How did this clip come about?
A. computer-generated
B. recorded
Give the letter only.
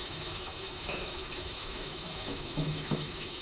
A